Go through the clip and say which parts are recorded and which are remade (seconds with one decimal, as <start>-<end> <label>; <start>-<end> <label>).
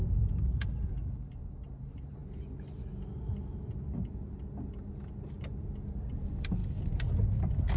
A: 0.0-7.8 recorded